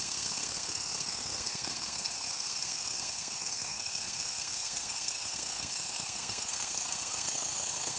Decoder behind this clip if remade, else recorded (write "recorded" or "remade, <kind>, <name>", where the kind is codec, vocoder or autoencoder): remade, codec, SNAC